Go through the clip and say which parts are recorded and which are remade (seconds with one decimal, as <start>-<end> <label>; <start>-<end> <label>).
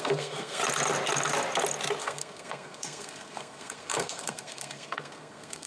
0.0-0.6 remade; 0.6-2.0 recorded; 2.0-5.7 remade